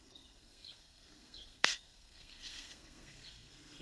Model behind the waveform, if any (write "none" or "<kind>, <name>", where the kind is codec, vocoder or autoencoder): codec, SNAC